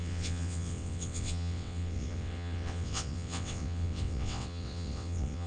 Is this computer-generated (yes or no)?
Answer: yes